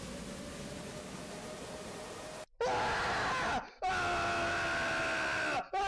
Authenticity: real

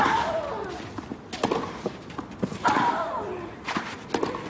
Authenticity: real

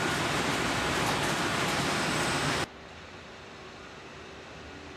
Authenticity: real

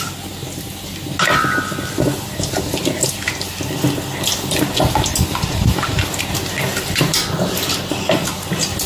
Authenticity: real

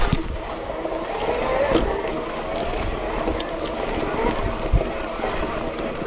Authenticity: real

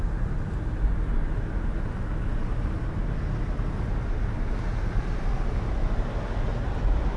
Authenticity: real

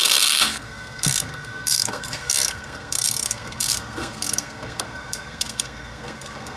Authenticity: fake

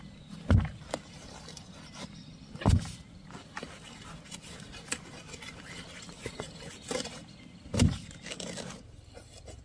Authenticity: real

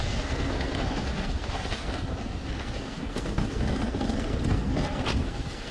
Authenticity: fake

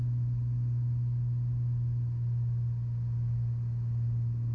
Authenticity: real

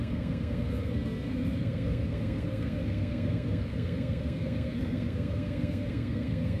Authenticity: fake